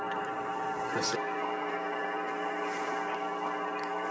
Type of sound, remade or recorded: remade